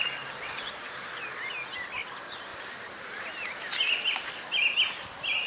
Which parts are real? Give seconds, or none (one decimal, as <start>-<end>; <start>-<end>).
0.0-0.8; 1.4-2.5; 3.2-5.5